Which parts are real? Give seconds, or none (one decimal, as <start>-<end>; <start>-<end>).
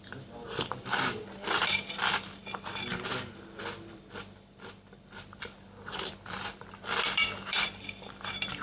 2.4-5.4